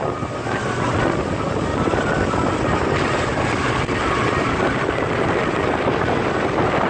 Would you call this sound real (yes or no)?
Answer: yes